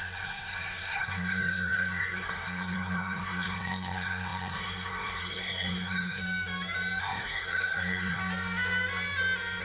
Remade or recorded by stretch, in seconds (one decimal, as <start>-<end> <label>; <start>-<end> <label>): 0.0-6.2 remade; 6.2-7.0 recorded; 7.0-8.2 remade; 8.2-9.6 recorded